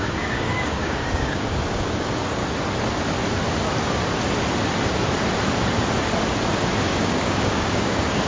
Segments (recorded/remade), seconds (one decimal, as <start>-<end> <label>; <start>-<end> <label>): 0.0-2.4 remade; 2.4-6.8 recorded; 6.8-8.3 remade